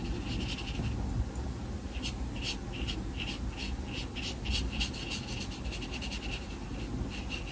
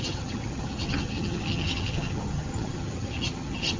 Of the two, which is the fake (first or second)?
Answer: second